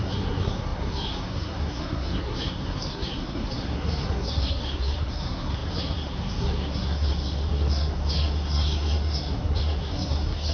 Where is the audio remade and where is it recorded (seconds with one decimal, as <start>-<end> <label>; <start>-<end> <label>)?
0.0-10.5 remade